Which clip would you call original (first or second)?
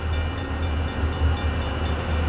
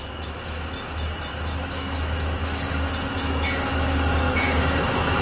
first